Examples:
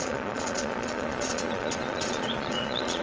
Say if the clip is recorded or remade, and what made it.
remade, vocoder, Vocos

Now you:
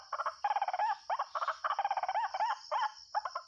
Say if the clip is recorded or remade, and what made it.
recorded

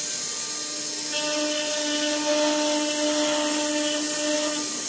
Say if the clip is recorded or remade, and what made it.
recorded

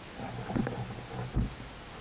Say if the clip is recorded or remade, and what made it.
recorded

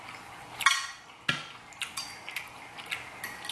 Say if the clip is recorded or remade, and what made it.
recorded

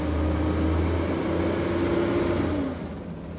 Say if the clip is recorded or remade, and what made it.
recorded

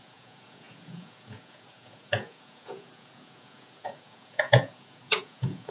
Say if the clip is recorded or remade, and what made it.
remade, vocoder, Vocos